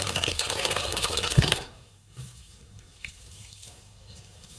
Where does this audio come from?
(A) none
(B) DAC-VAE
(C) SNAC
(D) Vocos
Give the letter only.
C